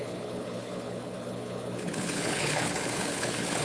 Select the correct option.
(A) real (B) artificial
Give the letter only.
B